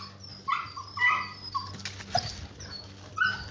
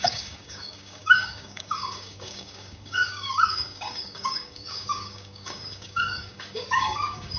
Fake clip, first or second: second